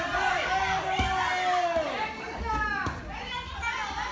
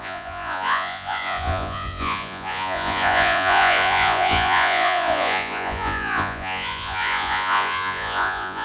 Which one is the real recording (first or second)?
first